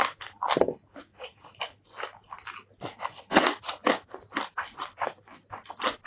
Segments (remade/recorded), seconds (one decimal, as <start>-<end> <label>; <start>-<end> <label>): 0.0-1.1 recorded; 1.1-1.6 remade; 1.6-3.1 recorded; 3.1-3.8 remade; 3.8-6.1 recorded